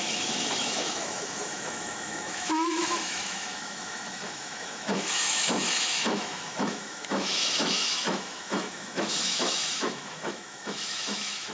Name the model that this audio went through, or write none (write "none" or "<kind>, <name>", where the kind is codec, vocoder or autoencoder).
autoencoder, DAC-VAE